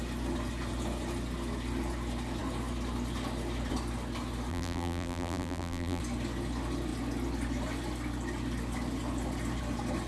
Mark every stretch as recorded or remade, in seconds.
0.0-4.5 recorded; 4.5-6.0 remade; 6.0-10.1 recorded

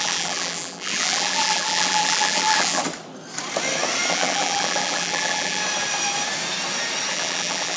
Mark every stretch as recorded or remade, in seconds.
0.0-2.8 remade; 2.8-4.1 recorded; 4.1-5.6 remade; 5.6-7.1 recorded; 7.1-7.8 remade

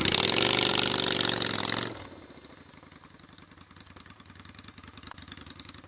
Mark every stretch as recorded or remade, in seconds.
0.0-5.9 recorded

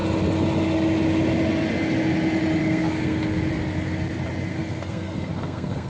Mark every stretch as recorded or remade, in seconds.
0.0-2.6 recorded; 2.6-3.5 remade; 3.5-4.5 recorded; 4.5-5.9 remade

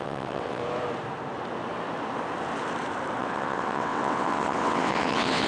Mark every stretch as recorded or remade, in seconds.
0.0-0.6 remade; 0.6-3.2 recorded; 3.2-5.5 remade

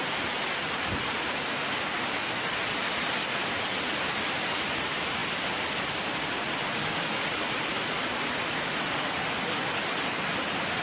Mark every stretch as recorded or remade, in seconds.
0.0-10.8 recorded

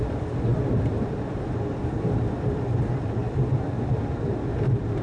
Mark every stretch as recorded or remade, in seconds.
0.0-5.0 remade

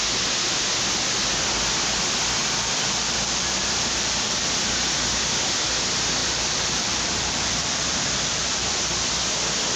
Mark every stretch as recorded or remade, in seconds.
0.0-2.4 recorded; 2.4-4.5 remade; 4.5-6.2 recorded; 6.2-9.2 remade; 9.2-9.8 recorded